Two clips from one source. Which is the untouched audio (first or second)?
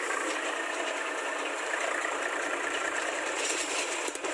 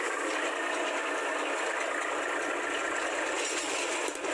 second